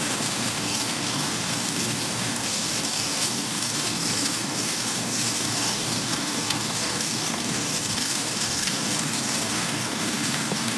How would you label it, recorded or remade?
remade